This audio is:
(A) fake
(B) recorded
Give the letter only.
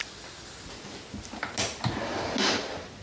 B